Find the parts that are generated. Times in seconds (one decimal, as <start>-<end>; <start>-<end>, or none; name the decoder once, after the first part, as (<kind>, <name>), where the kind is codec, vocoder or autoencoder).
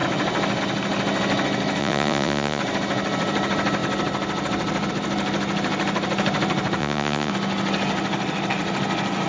1.8-2.6 (vocoder, Vocos); 6.8-7.3